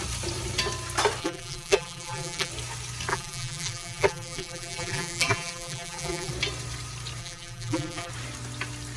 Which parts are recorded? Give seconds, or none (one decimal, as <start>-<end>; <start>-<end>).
0.0-1.2; 2.5-3.1; 6.3-7.2; 8.1-9.0

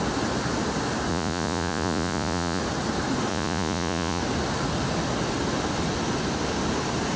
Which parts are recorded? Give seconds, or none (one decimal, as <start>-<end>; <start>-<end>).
0.0-1.1; 2.6-3.3; 4.2-7.2

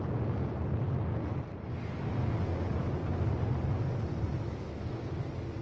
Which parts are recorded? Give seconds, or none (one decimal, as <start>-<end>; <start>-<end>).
0.0-4.3; 5.0-5.6

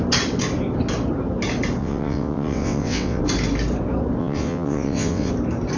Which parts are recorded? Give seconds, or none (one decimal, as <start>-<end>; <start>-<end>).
0.0-1.8; 3.2-4.2; 5.3-5.8

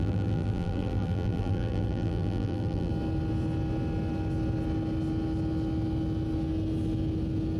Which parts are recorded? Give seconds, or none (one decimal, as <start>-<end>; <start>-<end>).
2.9-7.6